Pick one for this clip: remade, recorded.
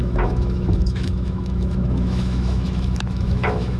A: remade